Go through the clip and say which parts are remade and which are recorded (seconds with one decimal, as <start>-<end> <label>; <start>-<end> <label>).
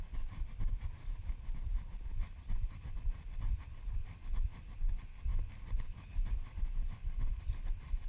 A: 0.0-1.7 recorded; 1.7-3.0 remade; 3.0-8.1 recorded